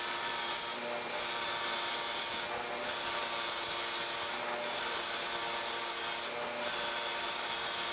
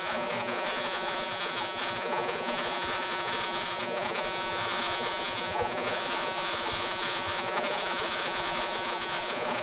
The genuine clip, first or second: first